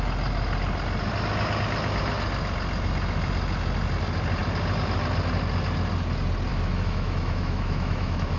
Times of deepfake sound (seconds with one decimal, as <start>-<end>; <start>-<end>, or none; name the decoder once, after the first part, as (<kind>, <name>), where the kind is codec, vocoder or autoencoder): 6.5-8.4 (autoencoder, DAC-VAE)